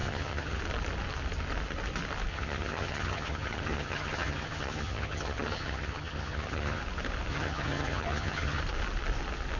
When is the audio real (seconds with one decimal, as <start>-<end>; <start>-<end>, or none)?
0.6-2.3; 6.8-7.3; 8.6-9.6